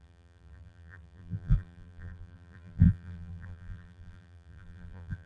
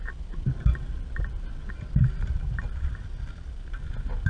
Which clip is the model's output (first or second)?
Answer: first